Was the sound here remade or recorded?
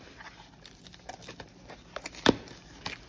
recorded